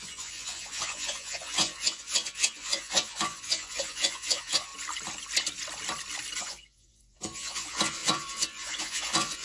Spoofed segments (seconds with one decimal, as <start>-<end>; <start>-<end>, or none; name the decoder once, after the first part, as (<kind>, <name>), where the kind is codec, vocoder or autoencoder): 0.0-4.7 (vocoder, Vocos); 6.4-9.4